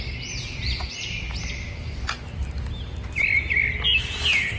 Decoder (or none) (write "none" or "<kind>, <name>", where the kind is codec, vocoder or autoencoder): none